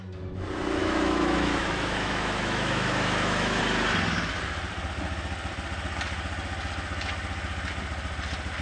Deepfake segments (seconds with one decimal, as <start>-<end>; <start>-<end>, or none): 0.8-3.6